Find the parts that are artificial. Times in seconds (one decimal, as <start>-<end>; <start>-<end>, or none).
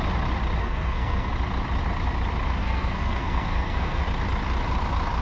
0.6-1.3; 2.6-4.0